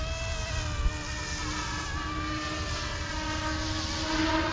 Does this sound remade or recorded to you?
recorded